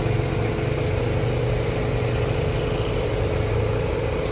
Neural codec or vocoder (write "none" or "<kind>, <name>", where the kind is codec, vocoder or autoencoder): none